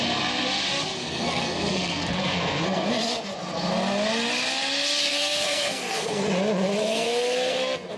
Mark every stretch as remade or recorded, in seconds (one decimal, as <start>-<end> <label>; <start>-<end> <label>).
0.0-0.9 recorded; 0.9-2.9 remade; 2.9-5.1 recorded; 5.1-6.2 remade; 6.2-6.8 recorded; 6.8-8.0 remade